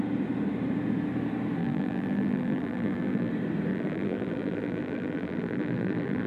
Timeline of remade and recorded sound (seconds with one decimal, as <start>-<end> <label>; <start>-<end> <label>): 0.0-1.6 recorded; 1.6-3.3 remade; 3.3-3.7 recorded; 3.7-6.3 remade